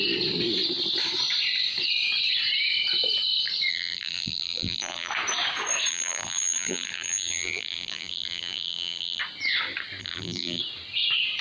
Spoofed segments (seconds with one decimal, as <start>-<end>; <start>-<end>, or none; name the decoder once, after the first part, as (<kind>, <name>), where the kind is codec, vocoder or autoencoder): 3.7-5.1 (vocoder, BigVGAN v2); 5.9-9.2; 10.0-10.6